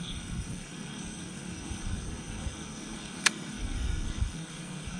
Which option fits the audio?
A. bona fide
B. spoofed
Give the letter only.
B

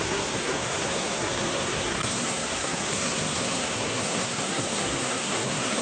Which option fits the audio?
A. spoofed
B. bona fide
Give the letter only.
A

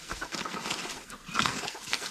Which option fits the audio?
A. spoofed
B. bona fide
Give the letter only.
A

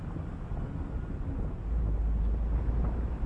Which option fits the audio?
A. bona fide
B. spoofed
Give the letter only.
A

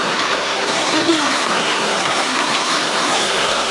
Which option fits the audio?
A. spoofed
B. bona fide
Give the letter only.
A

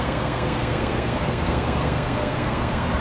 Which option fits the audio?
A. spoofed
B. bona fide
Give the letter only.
A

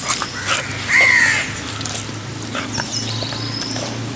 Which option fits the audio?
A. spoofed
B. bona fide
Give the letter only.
B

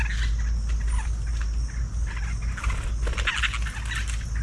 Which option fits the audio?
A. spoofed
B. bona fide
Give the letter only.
B